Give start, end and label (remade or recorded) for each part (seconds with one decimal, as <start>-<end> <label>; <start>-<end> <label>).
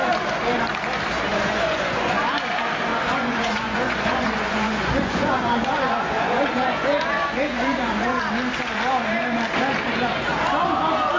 0.0-1.3 recorded; 1.3-2.2 remade; 2.2-2.9 recorded; 2.9-8.2 remade; 8.2-11.2 recorded